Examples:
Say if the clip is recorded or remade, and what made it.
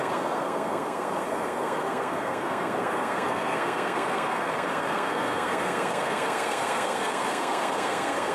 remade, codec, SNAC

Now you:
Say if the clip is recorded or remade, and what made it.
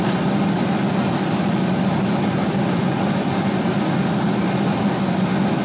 recorded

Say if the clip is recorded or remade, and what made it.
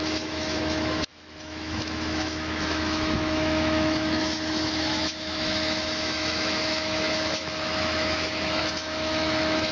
remade, autoencoder, DAC-VAE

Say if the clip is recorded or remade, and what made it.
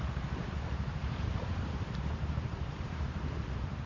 remade, vocoder, BigVGAN v2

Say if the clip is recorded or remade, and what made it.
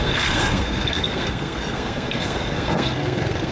remade, codec, SNAC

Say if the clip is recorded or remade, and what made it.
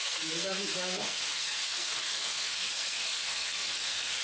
remade, codec, SNAC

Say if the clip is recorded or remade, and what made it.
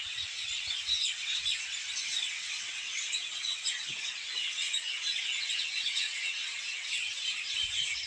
remade, vocoder, WaveNeXt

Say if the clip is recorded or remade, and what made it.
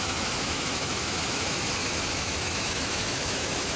remade, autoencoder, DAC-VAE